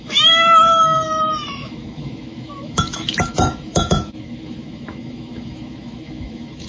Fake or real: fake